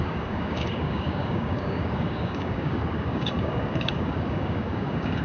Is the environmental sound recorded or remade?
remade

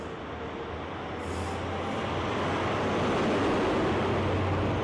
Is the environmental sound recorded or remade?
recorded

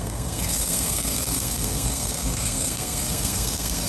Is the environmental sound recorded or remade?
remade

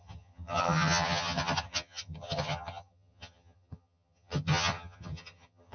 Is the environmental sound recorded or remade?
remade